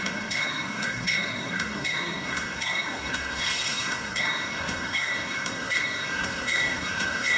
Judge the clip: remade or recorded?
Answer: remade